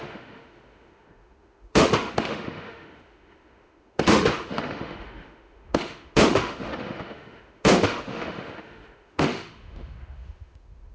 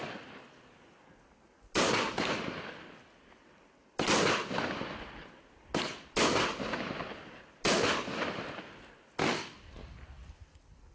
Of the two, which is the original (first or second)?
second